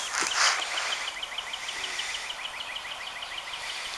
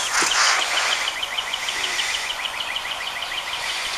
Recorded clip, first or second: first